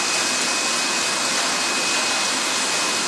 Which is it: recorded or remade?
recorded